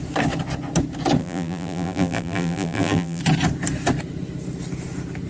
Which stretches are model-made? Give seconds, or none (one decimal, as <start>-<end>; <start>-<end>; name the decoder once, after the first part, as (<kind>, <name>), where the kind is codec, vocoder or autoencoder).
1.2-3.2 (vocoder, BigVGAN v2)